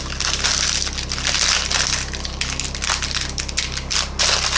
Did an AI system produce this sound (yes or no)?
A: no